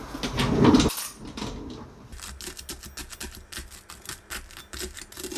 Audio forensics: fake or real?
real